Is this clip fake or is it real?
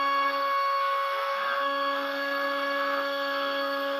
fake